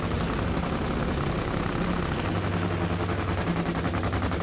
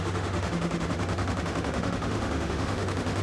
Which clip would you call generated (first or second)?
second